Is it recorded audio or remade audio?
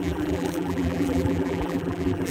remade